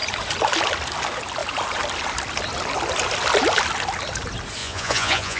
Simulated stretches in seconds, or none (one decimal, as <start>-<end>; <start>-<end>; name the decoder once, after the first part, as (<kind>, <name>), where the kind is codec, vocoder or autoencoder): 4.6-5.4 (vocoder, Vocos)